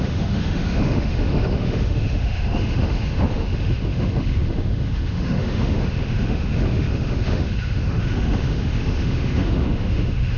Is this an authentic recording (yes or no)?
no